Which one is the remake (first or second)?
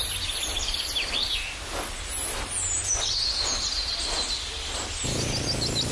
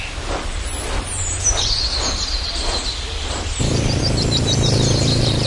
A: second